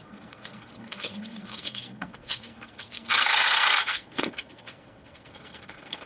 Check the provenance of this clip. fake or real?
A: fake